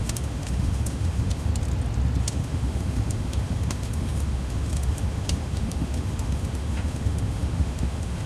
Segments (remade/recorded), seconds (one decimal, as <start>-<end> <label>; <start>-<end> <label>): 0.0-1.5 remade; 1.5-2.2 recorded; 2.2-8.3 remade